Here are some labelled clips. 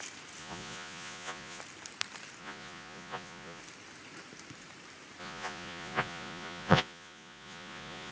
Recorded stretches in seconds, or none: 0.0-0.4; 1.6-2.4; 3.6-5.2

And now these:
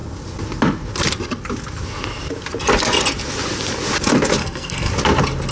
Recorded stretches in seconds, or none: 0.0-4.4; 4.9-5.5

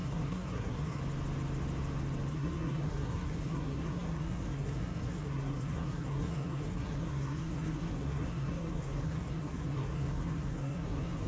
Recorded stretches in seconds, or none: 1.0-2.3